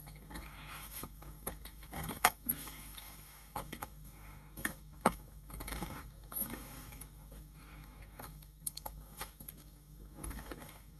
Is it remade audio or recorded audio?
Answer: remade